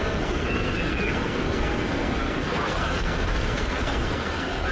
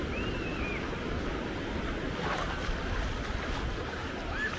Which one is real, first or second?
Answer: second